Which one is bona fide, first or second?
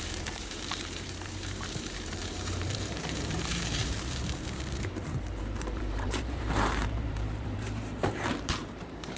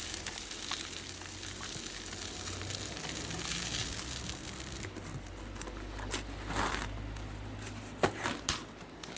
second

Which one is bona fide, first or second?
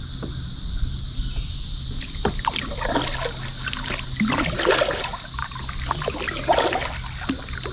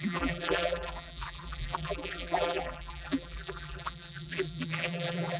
first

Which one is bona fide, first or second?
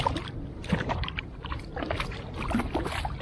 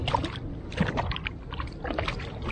second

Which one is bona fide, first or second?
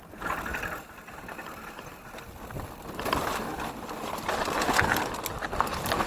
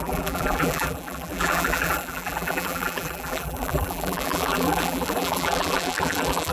first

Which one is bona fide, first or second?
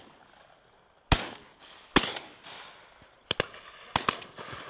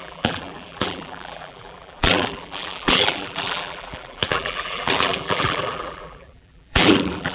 first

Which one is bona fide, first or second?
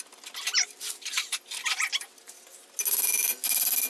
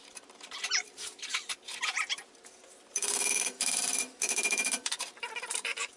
first